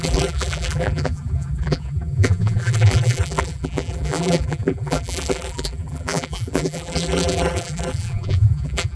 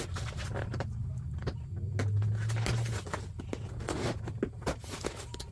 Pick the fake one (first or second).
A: first